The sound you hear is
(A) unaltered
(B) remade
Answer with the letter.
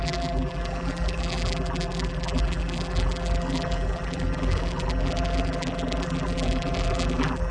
B